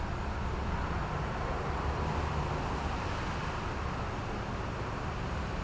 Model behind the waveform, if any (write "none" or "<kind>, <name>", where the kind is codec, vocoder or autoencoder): none